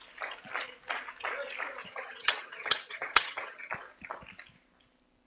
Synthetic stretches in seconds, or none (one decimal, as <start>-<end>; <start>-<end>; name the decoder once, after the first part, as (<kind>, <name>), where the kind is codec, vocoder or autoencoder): 1.8-3.7 (vocoder, HiFi-GAN)